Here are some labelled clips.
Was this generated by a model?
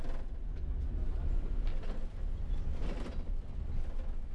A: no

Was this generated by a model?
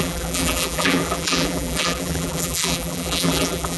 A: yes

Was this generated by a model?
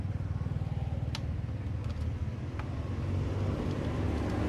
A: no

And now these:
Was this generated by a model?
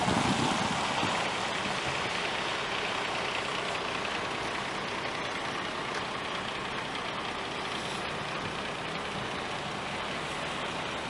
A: no